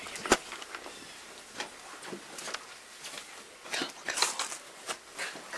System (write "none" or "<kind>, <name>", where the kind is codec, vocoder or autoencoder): none